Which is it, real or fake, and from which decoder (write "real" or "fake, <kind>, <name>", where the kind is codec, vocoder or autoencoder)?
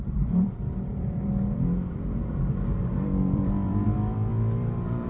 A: fake, vocoder, BigVGAN v2